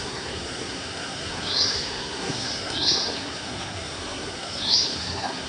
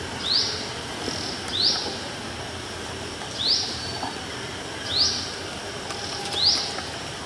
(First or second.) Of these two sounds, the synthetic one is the first